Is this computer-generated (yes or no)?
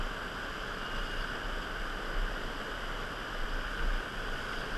no